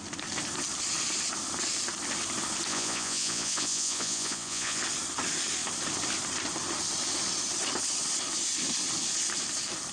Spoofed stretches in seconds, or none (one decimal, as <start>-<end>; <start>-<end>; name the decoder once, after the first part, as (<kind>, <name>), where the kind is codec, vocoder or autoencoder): 2.7-4.8 (vocoder, Vocos)